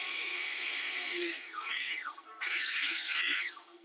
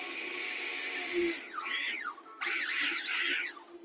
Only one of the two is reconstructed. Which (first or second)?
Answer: first